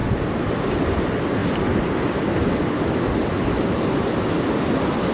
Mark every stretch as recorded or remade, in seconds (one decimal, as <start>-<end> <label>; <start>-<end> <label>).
0.0-1.0 remade; 1.0-5.1 recorded